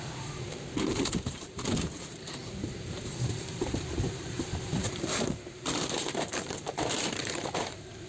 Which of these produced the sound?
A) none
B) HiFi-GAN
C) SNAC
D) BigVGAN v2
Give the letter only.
D